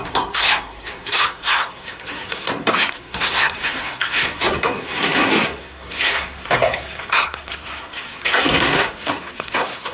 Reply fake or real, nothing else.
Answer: fake